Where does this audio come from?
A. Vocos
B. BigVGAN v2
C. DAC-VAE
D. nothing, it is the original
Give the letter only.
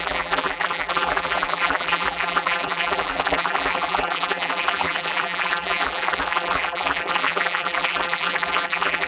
B